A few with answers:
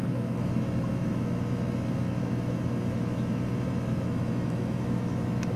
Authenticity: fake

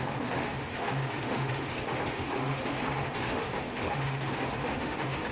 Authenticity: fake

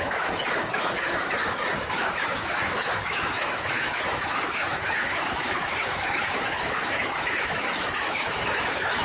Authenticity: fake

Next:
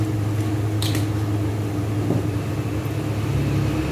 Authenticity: real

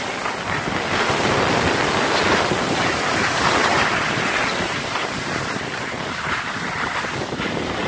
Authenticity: real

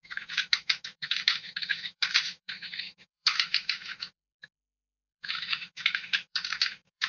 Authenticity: fake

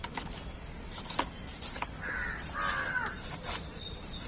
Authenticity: real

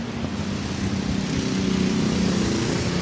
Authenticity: real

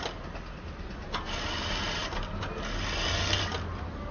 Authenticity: real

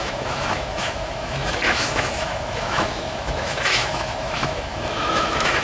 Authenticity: fake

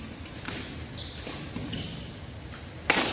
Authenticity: real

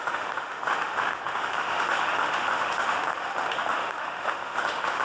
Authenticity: fake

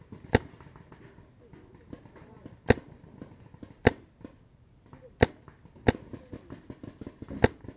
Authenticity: real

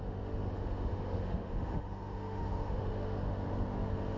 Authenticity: fake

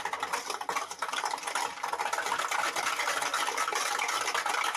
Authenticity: real